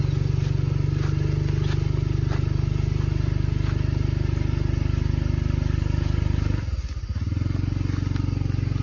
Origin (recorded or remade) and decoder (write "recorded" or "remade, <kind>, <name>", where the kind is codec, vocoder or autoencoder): recorded